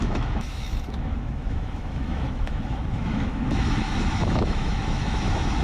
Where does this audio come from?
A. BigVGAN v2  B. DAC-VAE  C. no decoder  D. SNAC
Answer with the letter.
B